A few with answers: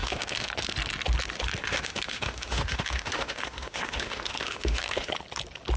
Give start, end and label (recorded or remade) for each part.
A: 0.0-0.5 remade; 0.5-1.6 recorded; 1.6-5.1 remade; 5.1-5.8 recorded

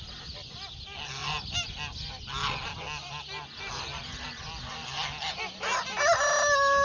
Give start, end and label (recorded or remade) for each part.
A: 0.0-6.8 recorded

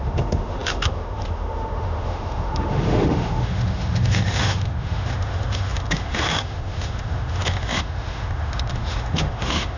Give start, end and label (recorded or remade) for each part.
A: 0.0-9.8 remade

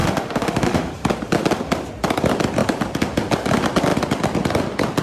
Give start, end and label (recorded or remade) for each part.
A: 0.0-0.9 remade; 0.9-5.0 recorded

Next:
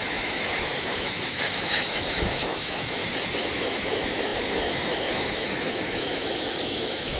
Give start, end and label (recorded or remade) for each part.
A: 0.0-3.0 remade; 3.0-3.8 recorded; 3.8-7.2 remade

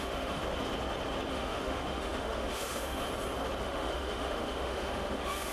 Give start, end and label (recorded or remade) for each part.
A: 0.0-0.4 remade; 0.4-1.3 recorded; 1.3-3.1 remade; 3.1-3.6 recorded; 3.6-5.5 remade

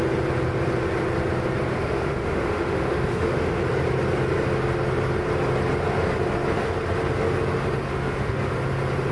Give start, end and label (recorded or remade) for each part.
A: 0.0-1.7 recorded; 1.7-3.6 remade; 3.6-7.9 recorded; 7.9-8.5 remade; 8.5-9.1 recorded